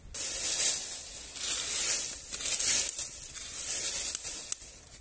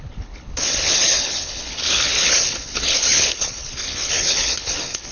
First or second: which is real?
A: first